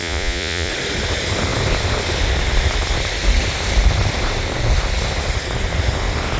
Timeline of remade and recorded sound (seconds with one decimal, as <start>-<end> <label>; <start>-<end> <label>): 0.0-0.7 remade; 0.7-6.4 recorded